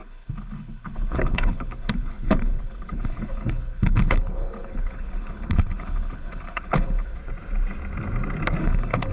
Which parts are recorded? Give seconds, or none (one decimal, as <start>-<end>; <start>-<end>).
7.2-8.6